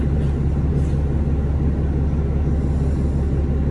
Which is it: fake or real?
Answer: real